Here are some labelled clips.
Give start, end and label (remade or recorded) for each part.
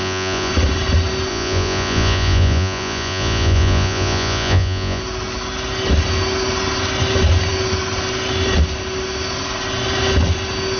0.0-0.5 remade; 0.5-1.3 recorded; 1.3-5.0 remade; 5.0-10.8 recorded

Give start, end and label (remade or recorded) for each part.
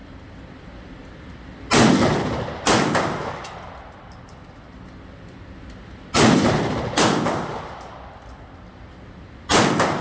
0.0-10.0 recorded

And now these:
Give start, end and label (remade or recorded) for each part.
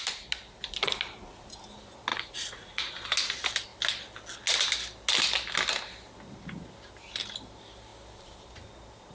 0.0-2.1 recorded; 2.1-2.9 remade; 2.9-9.1 recorded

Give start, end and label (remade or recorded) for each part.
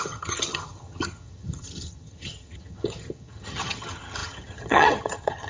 0.0-5.5 remade